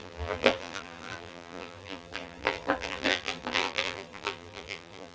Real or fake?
fake